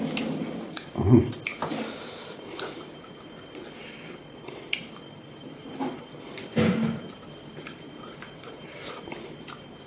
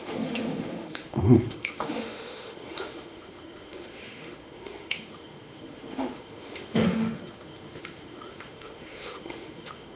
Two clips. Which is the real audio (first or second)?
first